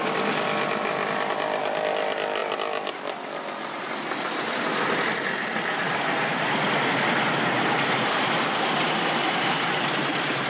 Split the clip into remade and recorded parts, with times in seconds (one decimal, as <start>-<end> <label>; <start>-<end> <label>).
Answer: 0.0-9.2 recorded; 9.2-10.5 remade